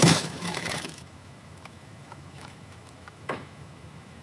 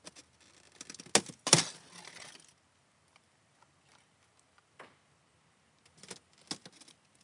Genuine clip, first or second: second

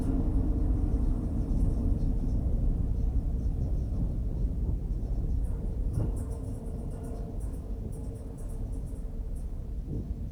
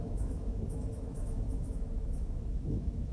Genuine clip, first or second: first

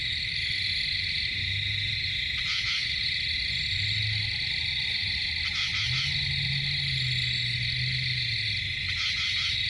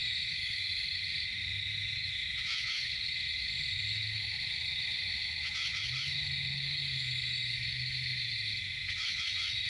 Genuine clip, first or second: first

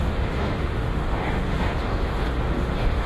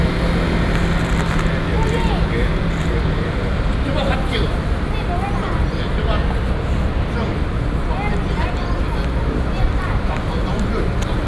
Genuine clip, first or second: second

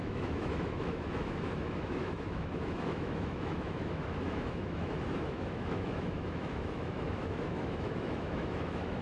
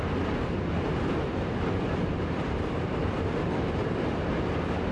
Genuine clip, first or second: second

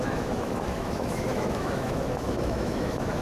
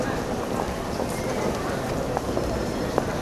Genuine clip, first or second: second